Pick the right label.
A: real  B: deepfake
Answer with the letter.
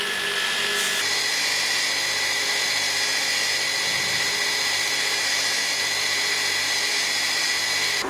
A